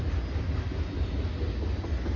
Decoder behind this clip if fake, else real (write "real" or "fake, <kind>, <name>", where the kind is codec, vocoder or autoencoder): real